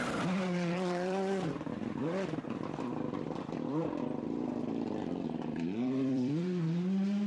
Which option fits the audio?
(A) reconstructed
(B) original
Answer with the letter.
A